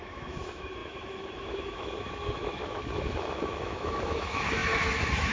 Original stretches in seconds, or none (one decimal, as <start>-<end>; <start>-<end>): none